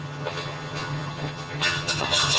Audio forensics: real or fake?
fake